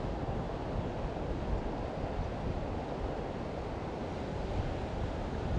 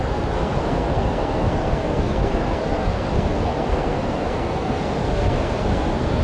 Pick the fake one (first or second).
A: second